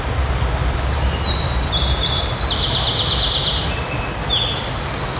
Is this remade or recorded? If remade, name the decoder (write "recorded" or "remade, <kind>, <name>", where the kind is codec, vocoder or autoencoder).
recorded